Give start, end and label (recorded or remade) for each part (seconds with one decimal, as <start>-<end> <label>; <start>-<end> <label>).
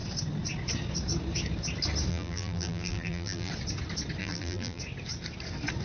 0.0-2.1 recorded; 2.1-3.5 remade; 3.5-4.2 recorded; 4.2-4.8 remade; 4.8-5.8 recorded